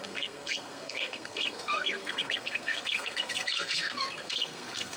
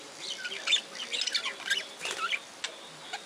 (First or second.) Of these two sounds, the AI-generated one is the first